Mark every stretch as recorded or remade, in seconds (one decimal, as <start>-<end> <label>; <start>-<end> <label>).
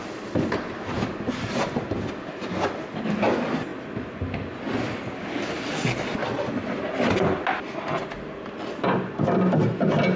0.0-10.2 recorded